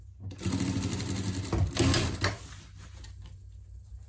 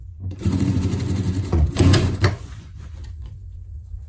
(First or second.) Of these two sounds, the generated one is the second